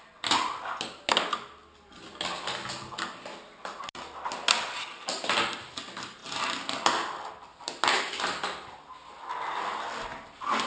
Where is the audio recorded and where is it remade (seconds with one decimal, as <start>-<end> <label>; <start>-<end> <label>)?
0.0-10.7 recorded